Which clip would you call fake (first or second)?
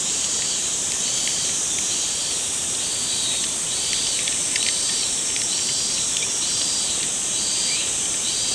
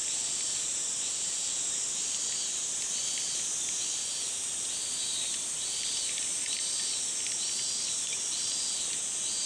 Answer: first